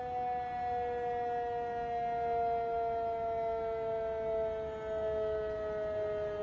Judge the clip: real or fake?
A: real